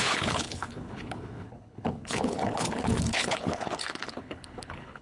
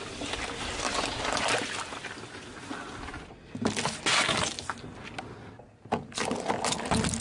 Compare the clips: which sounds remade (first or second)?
first